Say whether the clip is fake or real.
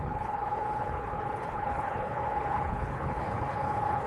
fake